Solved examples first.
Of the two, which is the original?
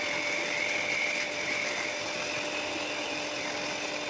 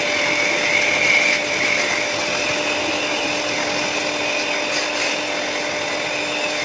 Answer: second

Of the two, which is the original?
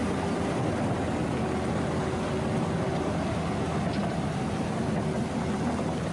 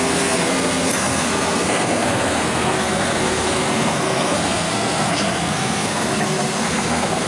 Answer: first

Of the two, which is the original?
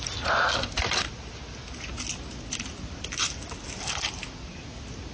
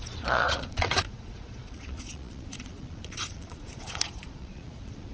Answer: first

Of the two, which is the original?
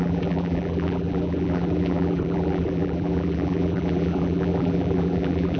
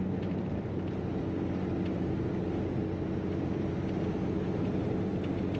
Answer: second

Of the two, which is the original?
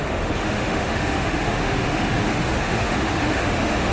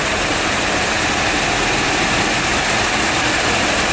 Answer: second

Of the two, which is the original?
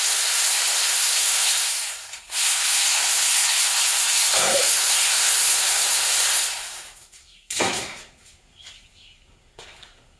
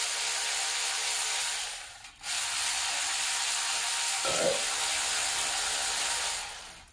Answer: second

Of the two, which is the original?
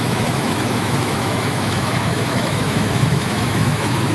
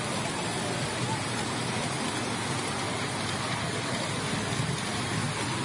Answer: second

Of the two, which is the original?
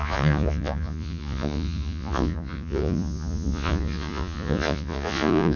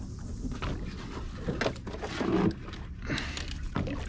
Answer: second